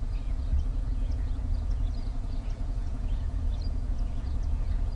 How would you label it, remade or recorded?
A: remade